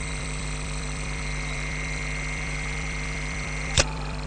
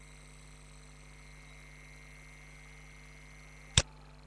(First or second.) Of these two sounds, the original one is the second